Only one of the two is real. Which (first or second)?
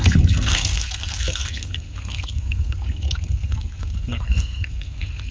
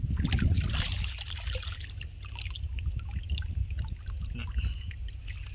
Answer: second